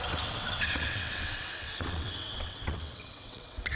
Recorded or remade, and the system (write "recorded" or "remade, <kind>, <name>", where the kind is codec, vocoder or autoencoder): remade, vocoder, WaveNeXt